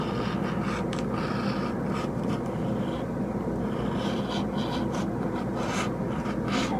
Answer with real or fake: real